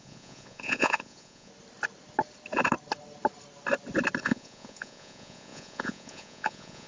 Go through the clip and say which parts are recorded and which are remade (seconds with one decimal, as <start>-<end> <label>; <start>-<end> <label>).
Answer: 0.0-1.5 remade; 1.5-4.2 recorded; 4.2-6.9 remade